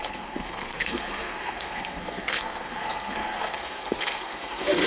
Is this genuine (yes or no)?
no